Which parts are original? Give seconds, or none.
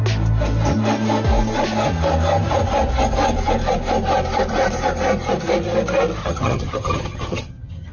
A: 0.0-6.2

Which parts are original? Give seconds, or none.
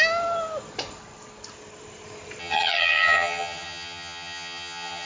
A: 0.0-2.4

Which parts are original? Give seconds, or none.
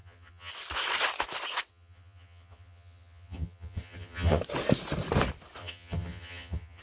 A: 0.5-1.7; 4.4-5.6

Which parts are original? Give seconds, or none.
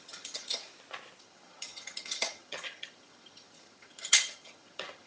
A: 0.6-1.2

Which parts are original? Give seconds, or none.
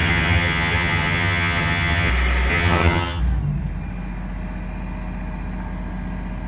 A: 2.1-2.5; 3.2-6.5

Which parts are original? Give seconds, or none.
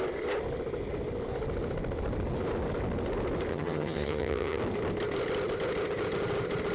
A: 0.0-3.5; 4.6-6.7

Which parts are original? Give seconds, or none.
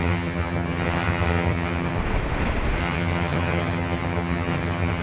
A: 2.0-2.8